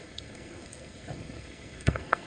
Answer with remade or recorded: remade